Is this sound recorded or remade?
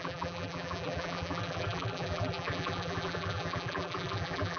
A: remade